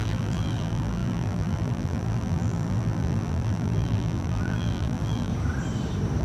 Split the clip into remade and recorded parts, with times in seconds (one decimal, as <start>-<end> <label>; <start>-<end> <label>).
0.0-5.3 remade; 5.3-6.2 recorded

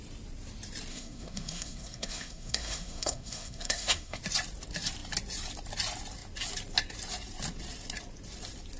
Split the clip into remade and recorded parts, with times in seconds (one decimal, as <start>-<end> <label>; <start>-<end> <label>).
0.0-0.9 recorded; 0.9-4.2 remade; 4.2-8.8 recorded

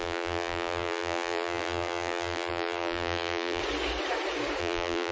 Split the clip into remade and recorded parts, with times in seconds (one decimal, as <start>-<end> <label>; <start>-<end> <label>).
0.0-3.6 remade; 3.6-4.6 recorded; 4.6-5.1 remade

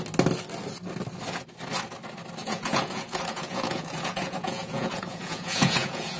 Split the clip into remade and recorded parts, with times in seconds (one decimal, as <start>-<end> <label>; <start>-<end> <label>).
0.0-2.4 recorded; 2.4-6.2 remade

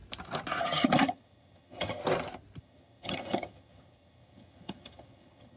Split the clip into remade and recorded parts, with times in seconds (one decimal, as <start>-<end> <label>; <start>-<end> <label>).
0.0-0.6 recorded; 0.6-2.0 remade; 2.0-2.6 recorded; 2.6-5.6 remade

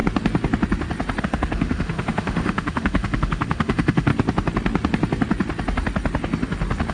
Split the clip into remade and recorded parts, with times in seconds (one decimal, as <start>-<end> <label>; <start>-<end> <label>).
0.0-1.2 recorded; 1.2-4.1 remade; 4.1-6.9 recorded

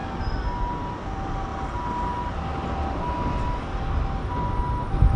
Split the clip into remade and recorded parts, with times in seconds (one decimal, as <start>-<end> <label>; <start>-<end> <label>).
0.0-5.2 recorded